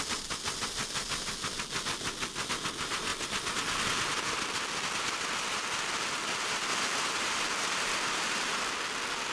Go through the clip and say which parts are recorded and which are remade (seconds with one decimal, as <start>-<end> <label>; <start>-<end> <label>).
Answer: 0.0-6.7 recorded; 6.7-8.7 remade; 8.7-9.3 recorded